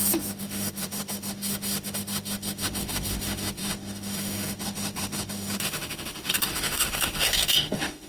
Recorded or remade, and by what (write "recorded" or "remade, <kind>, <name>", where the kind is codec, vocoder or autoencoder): remade, autoencoder, DAC-VAE